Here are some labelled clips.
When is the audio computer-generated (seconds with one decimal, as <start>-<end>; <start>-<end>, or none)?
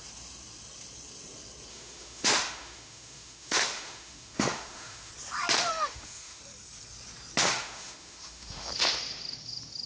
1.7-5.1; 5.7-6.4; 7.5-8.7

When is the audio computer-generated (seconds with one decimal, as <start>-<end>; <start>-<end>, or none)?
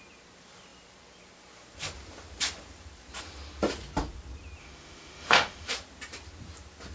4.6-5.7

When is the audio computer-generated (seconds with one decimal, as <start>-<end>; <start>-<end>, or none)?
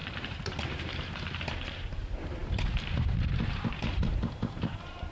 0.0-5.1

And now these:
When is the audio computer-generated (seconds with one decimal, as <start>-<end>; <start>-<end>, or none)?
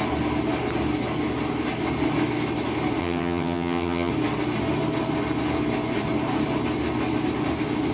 3.0-4.1